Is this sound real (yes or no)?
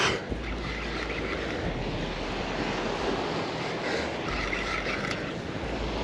yes